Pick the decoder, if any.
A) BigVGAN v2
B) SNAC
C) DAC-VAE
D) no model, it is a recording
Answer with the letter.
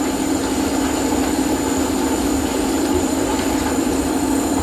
A